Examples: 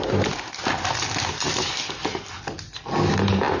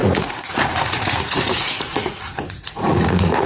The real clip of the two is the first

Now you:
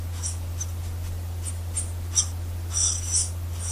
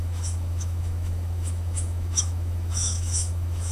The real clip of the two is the first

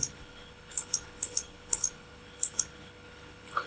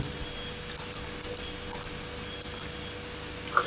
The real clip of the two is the second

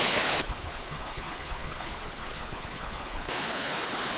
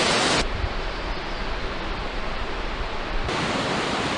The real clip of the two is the second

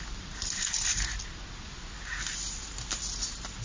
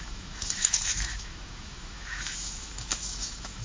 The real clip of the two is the first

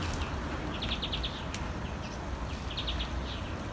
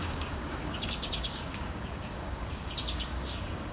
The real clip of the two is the first